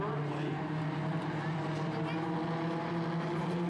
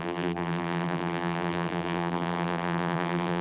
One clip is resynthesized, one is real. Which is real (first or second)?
first